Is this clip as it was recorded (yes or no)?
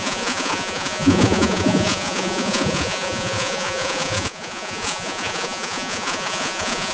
no